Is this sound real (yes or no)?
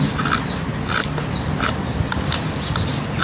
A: yes